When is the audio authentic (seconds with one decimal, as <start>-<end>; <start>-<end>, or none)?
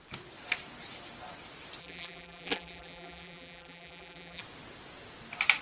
0.0-1.8; 4.4-5.6